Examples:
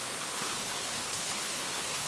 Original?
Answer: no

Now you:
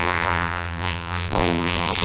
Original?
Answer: no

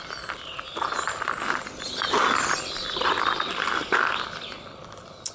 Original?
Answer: yes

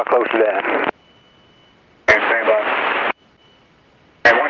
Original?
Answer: yes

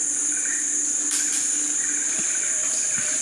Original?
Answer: yes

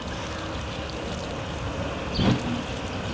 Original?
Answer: yes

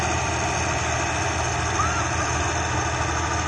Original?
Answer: yes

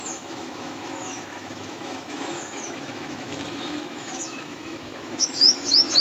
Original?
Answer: no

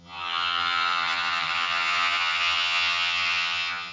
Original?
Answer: no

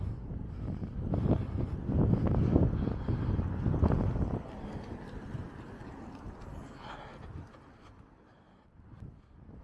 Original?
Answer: yes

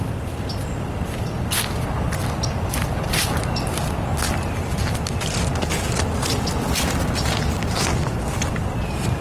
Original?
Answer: yes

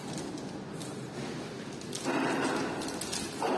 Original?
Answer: yes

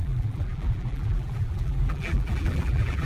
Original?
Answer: no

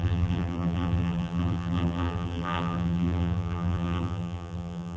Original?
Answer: no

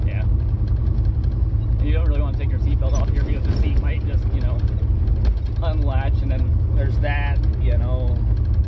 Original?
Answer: yes